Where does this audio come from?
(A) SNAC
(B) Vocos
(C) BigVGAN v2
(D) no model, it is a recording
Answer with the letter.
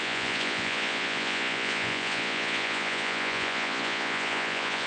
B